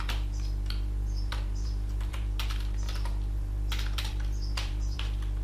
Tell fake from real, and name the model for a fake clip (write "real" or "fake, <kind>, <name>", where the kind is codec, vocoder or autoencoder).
fake, vocoder, BigVGAN v2